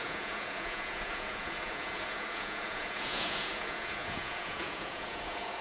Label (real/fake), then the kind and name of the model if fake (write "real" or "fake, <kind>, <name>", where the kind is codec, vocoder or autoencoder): fake, vocoder, Vocos